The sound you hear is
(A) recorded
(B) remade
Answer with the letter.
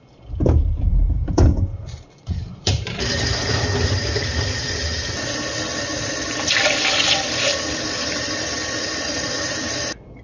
B